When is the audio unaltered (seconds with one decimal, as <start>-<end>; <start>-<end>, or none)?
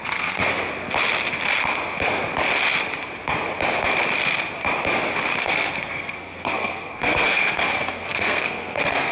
0.4-5.4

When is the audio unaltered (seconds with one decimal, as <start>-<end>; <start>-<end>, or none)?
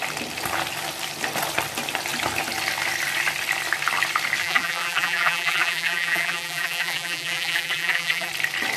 0.0-4.4; 8.3-8.8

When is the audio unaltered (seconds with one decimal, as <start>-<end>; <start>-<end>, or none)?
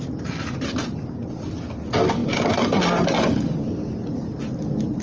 0.0-5.0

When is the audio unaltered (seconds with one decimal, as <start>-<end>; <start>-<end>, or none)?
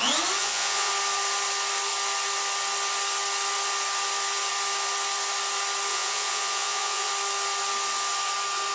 0.0-0.4; 0.9-5.9; 7.1-8.7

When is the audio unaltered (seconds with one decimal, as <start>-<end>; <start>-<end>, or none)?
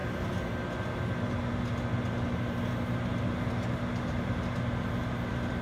0.0-5.6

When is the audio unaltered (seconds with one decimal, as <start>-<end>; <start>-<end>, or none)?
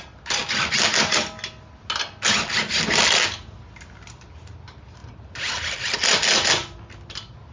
0.0-7.5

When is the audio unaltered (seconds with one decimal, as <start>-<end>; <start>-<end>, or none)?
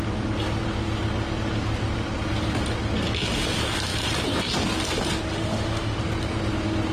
0.0-5.3; 6.0-6.9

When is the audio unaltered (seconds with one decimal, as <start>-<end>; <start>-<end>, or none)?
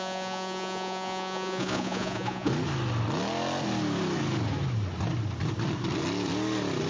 2.5-6.9